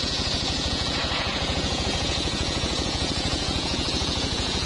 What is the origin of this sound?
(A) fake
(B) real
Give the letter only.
A